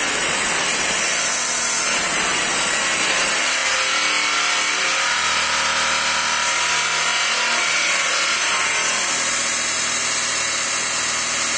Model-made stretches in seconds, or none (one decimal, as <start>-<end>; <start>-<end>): none